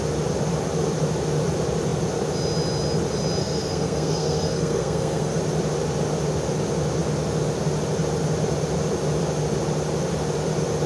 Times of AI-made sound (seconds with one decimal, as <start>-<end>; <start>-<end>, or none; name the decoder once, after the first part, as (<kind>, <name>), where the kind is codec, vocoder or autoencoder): 3.4-5.4 (codec, SNAC)